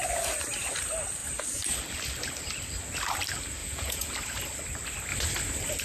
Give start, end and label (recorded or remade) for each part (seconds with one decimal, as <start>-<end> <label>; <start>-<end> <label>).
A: 0.0-3.6 recorded; 3.6-4.1 remade; 4.1-5.8 recorded